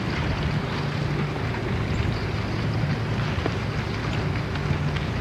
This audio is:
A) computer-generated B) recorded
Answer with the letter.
B